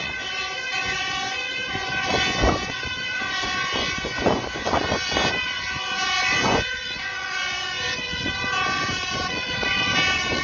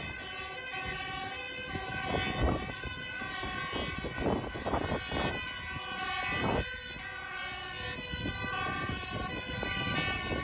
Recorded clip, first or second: second